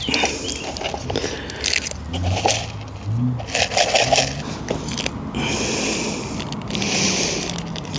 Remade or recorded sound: recorded